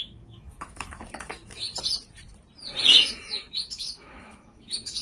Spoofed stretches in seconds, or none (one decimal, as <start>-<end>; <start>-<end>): 0.0-1.7; 2.8-5.0